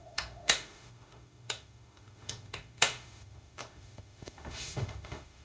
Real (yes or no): no